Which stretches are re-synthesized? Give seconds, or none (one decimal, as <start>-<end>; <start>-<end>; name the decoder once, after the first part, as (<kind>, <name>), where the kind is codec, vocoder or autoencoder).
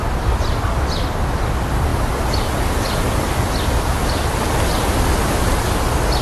none